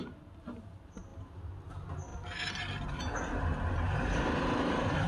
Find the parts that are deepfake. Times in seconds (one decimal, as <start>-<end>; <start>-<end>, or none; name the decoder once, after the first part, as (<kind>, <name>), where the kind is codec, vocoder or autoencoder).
none